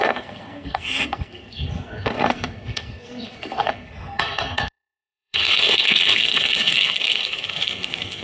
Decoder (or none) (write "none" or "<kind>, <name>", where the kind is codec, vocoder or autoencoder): codec, SNAC